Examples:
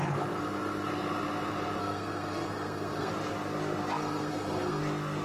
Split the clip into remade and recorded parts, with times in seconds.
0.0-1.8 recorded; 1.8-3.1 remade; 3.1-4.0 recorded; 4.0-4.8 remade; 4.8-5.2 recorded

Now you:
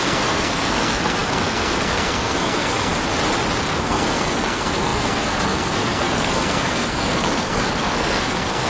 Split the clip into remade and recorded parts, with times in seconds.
0.0-2.9 remade; 2.9-3.7 recorded; 3.7-8.7 remade